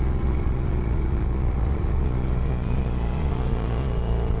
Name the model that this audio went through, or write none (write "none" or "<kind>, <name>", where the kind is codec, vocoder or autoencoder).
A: vocoder, Vocos